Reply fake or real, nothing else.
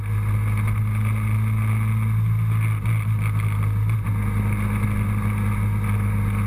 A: real